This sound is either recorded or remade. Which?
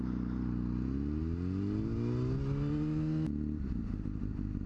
recorded